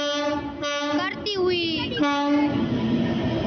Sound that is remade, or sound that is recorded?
recorded